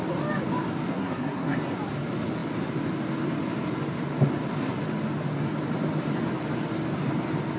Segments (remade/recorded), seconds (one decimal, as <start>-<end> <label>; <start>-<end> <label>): 0.0-0.9 recorded; 0.9-1.6 remade; 1.6-7.6 recorded